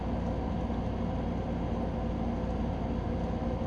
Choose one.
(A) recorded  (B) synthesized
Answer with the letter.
A